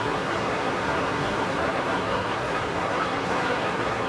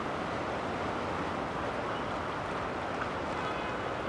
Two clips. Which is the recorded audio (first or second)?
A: second